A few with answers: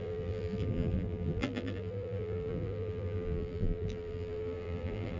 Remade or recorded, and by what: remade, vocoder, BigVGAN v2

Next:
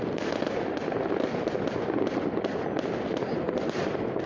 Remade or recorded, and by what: recorded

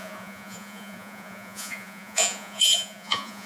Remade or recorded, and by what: remade, vocoder, Vocos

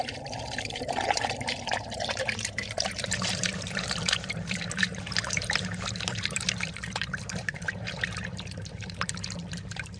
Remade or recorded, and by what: remade, vocoder, BigVGAN v2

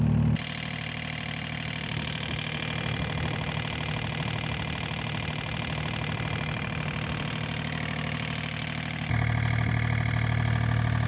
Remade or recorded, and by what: recorded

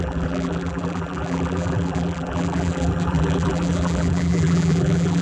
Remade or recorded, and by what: remade, vocoder, BigVGAN v2